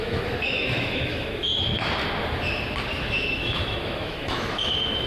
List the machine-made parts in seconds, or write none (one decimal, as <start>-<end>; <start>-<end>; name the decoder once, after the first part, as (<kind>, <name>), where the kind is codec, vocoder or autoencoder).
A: 0.0-1.5 (autoencoder, DAC-VAE); 3.0-5.1